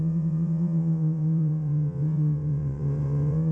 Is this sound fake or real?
fake